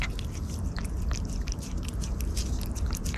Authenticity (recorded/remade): recorded